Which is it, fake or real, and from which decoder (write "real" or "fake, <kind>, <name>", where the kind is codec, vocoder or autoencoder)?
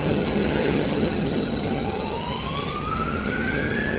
fake, vocoder, HiFi-GAN